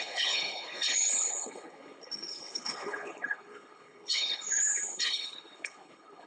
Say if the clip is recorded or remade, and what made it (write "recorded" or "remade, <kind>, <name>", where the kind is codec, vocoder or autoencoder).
remade, codec, HILCodec